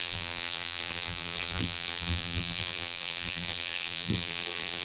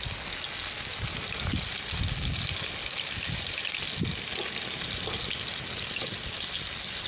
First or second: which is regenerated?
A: first